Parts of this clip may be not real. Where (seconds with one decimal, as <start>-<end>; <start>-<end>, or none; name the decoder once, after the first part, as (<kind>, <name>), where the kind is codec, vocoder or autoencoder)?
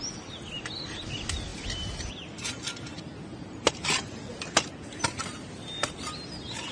3.3-4.5 (vocoder, BigVGAN v2)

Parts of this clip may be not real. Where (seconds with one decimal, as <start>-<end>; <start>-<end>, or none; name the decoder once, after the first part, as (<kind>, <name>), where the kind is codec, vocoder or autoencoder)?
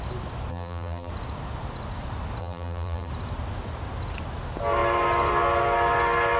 0.5-1.1 (vocoder, BigVGAN v2); 2.4-3.1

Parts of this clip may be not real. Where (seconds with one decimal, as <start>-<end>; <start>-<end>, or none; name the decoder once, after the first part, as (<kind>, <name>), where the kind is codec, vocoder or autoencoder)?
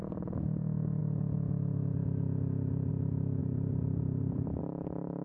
3.4-4.6 (vocoder, BigVGAN v2)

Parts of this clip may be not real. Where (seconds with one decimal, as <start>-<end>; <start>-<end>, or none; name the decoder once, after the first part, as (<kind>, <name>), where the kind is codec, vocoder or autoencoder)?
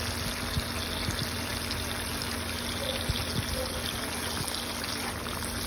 none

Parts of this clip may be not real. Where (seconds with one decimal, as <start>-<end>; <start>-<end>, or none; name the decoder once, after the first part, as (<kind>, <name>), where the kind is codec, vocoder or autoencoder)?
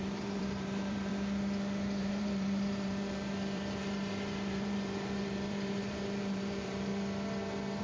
0.0-1.1 (vocoder, BigVGAN v2); 2.0-6.9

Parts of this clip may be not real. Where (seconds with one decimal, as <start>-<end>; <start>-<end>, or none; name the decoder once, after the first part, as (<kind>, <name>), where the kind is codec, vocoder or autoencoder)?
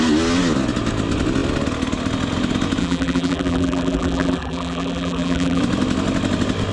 2.8-5.6 (vocoder, BigVGAN v2)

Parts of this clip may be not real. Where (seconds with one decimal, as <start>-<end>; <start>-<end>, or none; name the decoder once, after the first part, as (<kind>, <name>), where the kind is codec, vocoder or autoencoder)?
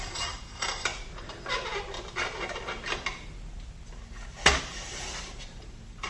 0.0-0.9 (vocoder, BigVGAN v2); 4.6-6.1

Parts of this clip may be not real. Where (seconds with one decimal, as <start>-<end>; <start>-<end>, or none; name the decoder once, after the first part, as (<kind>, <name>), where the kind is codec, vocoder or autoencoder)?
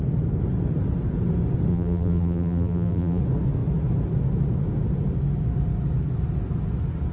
1.7-3.2 (vocoder, BigVGAN v2)